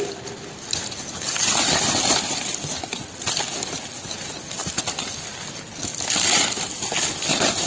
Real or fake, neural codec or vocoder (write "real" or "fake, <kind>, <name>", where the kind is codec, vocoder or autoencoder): real